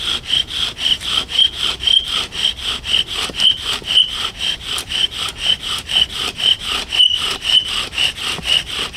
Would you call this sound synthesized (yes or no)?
no